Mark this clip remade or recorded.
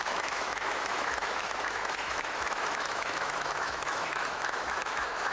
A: remade